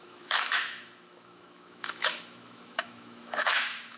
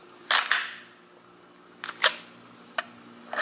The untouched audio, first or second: second